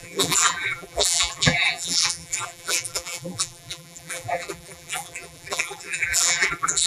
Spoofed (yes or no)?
yes